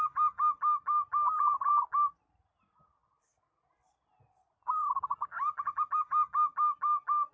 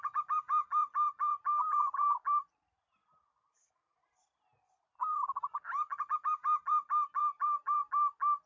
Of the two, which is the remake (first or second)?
second